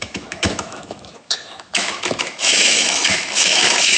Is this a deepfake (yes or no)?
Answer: yes